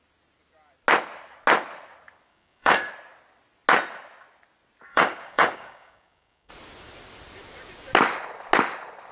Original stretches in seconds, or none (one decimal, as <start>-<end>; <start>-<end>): 0.0-2.3; 2.9-4.9; 6.5-9.1